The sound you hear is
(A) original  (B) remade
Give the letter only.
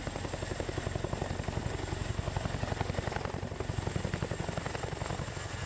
A